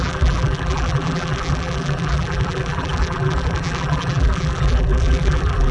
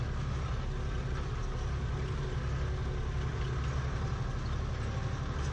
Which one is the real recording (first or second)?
second